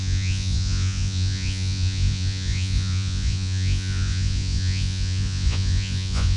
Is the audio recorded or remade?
remade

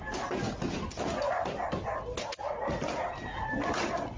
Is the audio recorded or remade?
recorded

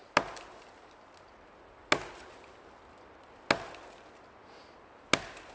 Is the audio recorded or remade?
recorded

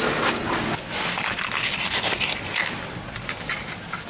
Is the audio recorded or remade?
recorded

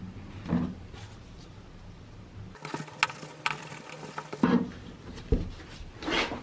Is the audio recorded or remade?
recorded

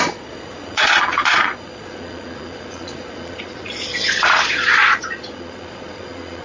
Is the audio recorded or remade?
remade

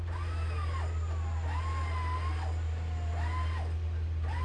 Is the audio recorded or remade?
recorded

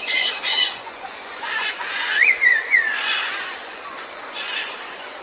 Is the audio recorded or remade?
remade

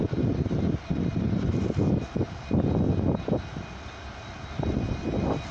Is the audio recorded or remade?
recorded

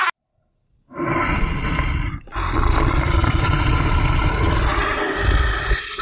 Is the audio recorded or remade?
recorded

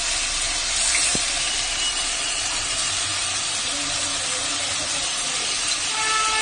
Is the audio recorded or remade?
recorded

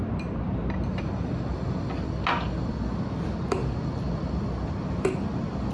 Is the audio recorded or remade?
recorded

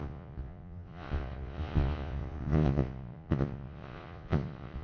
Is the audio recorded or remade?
remade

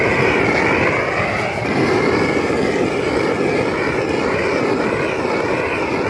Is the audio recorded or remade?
recorded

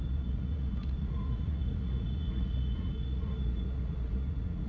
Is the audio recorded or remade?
remade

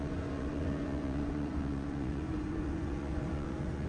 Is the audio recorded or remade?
remade